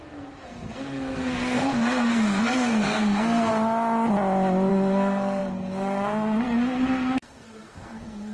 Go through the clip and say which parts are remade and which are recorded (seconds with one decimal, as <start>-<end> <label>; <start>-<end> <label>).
0.0-3.5 remade; 3.5-4.7 recorded; 4.7-8.3 remade